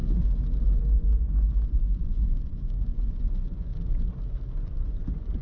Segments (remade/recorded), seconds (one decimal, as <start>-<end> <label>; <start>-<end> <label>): 0.0-0.8 recorded; 0.8-3.7 remade; 3.7-4.6 recorded; 4.6-5.4 remade